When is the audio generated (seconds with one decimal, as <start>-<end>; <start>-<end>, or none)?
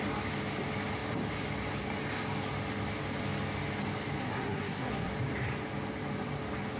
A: 4.2-5.1